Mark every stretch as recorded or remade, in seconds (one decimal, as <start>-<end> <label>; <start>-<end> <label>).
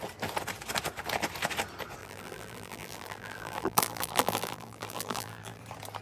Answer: 0.0-2.0 recorded; 2.0-5.6 remade; 5.6-6.0 recorded